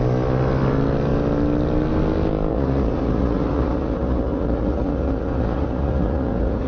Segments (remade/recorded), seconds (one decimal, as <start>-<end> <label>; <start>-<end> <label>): 0.0-2.5 recorded; 2.5-6.7 remade